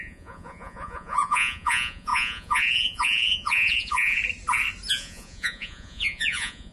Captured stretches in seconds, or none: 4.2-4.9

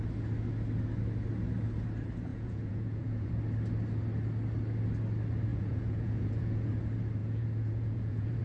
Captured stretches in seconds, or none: 0.0-2.3; 3.3-5.5; 6.7-7.2

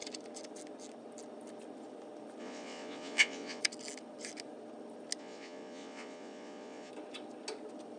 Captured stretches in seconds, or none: 0.0-2.4; 3.6-5.2; 6.9-8.0

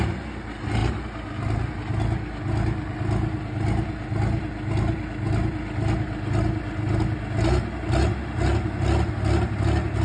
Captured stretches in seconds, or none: 0.0-10.0

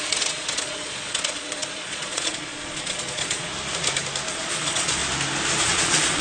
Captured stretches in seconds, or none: 3.5-4.3; 5.0-5.6